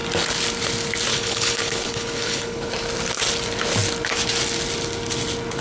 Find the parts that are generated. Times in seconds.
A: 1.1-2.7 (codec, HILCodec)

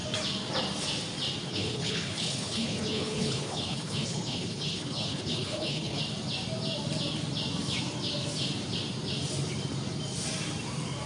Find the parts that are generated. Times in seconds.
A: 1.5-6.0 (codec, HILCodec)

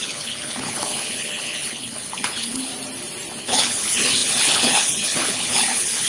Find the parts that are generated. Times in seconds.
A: 0.0-2.7 (codec, HILCodec); 3.4-6.1

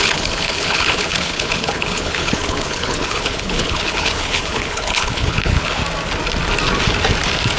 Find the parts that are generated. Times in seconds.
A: 0.0-5.8 (codec, HILCodec)